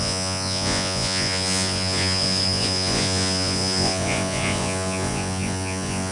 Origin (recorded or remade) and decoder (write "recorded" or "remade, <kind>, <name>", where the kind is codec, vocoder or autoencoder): remade, vocoder, Vocos